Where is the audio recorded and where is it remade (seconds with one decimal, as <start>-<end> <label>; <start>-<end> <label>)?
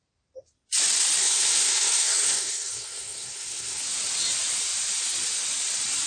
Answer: 0.0-1.2 recorded; 1.2-3.8 remade; 3.8-6.1 recorded